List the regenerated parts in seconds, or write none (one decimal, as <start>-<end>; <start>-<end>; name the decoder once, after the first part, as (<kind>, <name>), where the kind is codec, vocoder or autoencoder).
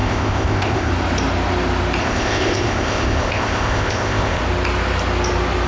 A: 0.0-0.9 (codec, ZipCodec); 2.0-4.4